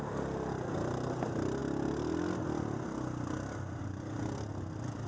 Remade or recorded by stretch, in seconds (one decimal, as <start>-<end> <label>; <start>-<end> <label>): 0.0-5.1 recorded